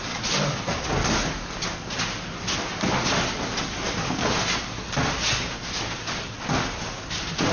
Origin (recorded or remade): recorded